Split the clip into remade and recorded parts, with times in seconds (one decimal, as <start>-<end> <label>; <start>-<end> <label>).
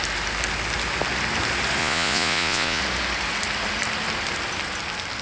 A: 0.0-1.8 recorded; 1.8-2.8 remade; 2.8-5.2 recorded